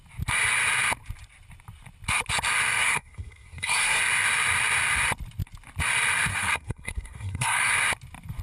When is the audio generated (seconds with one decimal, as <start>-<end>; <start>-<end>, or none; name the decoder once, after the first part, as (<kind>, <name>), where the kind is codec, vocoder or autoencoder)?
2.8-4.0 (codec, SNAC); 6.3-7.7